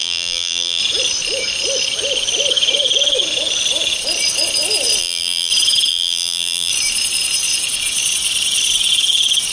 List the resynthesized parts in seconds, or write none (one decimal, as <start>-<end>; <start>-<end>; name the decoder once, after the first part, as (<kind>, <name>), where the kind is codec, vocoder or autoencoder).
0.0-0.8 (vocoder, BigVGAN v2); 5.0-5.5; 5.9-6.7

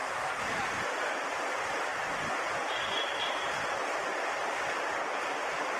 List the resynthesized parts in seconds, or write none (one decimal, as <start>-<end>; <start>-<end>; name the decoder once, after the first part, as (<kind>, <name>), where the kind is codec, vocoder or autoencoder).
0.8-1.9 (vocoder, BigVGAN v2); 4.0-5.8

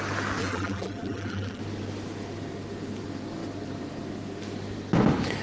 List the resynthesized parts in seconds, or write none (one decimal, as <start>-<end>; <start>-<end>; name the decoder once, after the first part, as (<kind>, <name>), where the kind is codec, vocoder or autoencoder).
0.4-1.6 (vocoder, BigVGAN v2)

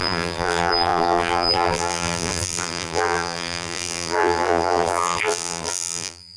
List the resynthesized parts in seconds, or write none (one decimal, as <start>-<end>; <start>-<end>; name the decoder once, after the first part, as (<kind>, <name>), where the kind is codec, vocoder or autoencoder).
0.0-6.4 (vocoder, BigVGAN v2)

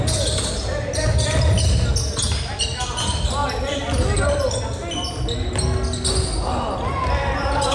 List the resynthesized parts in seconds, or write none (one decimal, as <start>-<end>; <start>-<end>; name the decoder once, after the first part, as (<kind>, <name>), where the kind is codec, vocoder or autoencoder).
none

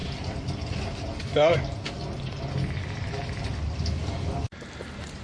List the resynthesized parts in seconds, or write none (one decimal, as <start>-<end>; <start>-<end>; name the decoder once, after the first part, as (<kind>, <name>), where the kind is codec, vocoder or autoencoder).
none

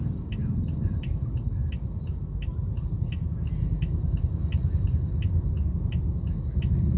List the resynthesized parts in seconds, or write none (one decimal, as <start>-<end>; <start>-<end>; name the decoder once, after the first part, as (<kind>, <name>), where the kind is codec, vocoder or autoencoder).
0.4-1.3 (vocoder, BigVGAN v2)